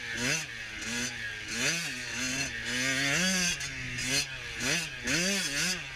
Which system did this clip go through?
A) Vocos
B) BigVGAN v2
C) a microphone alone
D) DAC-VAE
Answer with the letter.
C